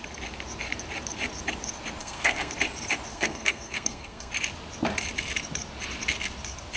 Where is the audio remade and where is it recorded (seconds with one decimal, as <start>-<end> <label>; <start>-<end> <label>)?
0.0-2.0 recorded; 2.0-2.5 remade; 2.5-3.1 recorded; 3.1-4.3 remade; 4.3-6.8 recorded